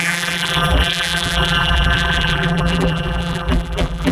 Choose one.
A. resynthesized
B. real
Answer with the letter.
A